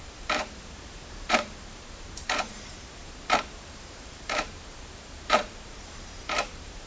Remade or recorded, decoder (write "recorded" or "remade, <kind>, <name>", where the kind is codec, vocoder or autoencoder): remade, vocoder, BigVGAN v2